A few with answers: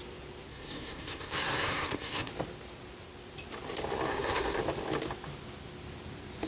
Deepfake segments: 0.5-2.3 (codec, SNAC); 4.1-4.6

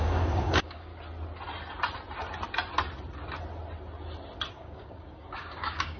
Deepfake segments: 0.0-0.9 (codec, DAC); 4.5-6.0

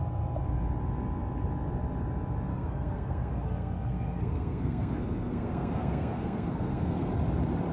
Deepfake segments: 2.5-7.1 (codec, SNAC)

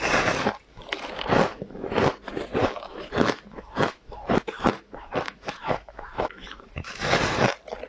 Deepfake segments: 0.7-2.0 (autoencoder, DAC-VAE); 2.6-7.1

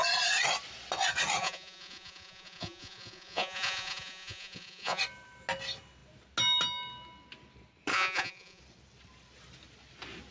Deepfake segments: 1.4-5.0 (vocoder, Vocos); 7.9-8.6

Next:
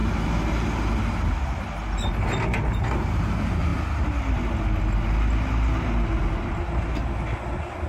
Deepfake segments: none

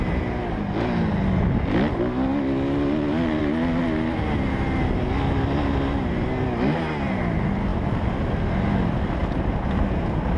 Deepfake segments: none